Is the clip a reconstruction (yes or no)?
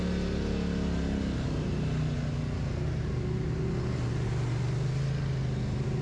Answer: no